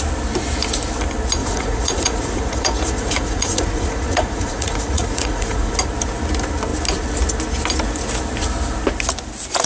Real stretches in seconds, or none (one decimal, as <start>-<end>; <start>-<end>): 0.0-1.4; 5.8-9.7